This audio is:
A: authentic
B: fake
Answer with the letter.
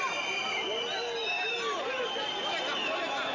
A